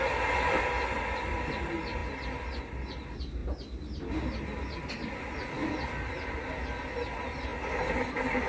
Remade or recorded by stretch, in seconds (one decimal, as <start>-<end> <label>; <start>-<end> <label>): 0.0-8.5 recorded